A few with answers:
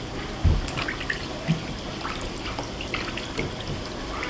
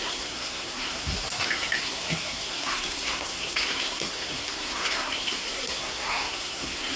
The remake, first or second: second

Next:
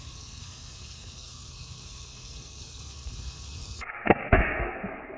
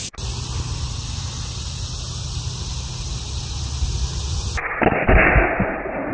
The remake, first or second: first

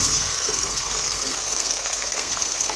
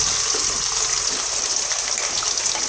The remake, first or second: first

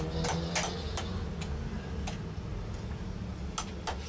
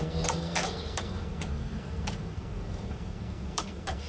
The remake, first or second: second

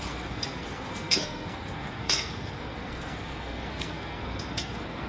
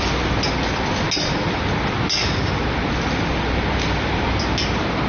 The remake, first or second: first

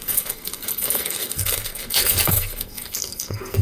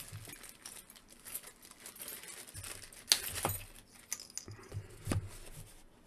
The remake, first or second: first